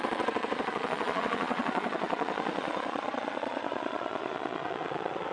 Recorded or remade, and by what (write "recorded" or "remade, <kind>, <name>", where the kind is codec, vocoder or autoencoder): remade, vocoder, Vocos